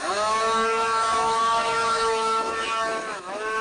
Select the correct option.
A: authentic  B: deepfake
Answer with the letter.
B